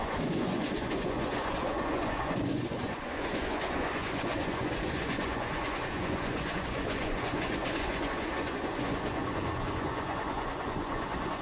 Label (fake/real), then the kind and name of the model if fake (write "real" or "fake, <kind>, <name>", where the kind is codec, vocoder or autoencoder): fake, vocoder, Vocos